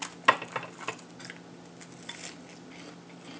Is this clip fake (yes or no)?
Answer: no